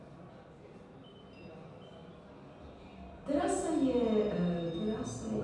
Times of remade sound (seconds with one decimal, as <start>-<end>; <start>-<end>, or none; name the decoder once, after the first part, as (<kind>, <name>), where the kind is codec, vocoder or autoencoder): none